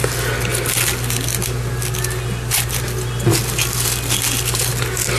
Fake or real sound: real